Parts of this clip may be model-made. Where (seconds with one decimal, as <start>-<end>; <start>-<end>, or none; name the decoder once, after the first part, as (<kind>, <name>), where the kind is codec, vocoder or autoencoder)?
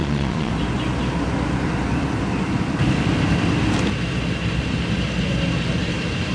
0.0-0.5 (vocoder, Vocos)